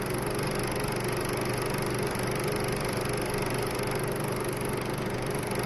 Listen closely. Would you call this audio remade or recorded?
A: recorded